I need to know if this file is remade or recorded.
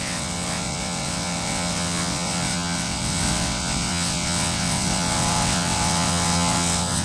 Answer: remade